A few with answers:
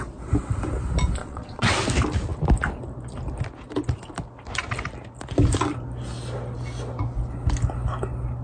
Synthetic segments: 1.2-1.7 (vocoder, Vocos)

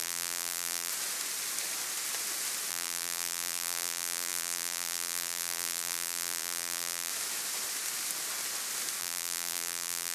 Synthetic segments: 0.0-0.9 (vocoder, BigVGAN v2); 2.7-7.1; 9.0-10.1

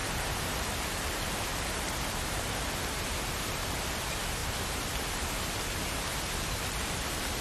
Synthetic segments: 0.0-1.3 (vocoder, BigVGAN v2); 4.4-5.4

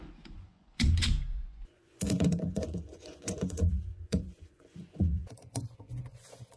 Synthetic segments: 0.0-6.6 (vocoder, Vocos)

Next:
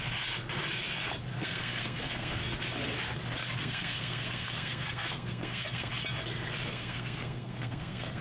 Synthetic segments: 1.3-2.4 (codec, SNAC); 3.6-5.9; 6.7-8.2

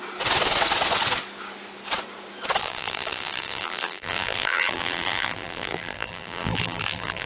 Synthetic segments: 2.6-7.3 (vocoder, BigVGAN v2)

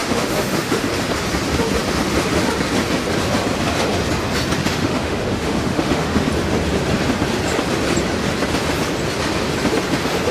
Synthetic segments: 0.0-0.9 (autoencoder, DAC-VAE); 4.6-6.3

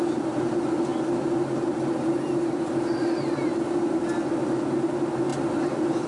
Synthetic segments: none